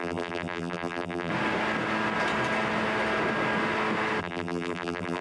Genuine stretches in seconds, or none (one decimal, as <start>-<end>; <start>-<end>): 1.3-4.2